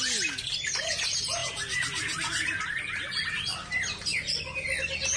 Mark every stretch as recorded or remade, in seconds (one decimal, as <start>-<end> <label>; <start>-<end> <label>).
0.0-5.2 recorded